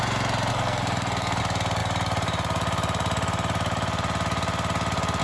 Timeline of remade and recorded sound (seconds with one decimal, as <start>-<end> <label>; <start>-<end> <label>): 0.0-0.5 recorded; 0.5-1.4 remade; 1.4-5.2 recorded